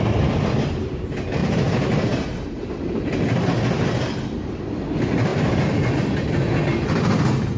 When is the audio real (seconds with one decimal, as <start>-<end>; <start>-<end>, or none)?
0.0-1.4; 3.4-7.6